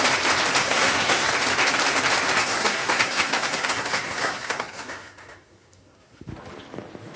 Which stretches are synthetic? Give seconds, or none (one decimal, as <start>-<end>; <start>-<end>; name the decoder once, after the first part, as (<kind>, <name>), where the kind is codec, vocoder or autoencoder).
0.6-1.3 (codec, SNAC); 2.4-6.2